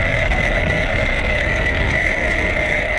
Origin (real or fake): fake